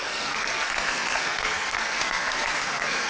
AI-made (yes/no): yes